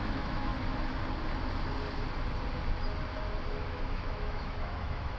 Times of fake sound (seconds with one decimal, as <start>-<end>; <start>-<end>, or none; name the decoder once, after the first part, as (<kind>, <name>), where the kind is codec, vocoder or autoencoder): 0.0-0.5 (autoencoder, DAC-VAE); 3.6-5.2